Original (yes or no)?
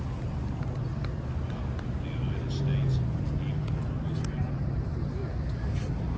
yes